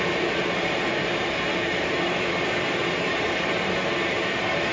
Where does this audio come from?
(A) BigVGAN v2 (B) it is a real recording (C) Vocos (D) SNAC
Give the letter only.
A